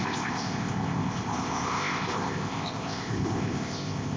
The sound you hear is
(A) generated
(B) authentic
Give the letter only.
A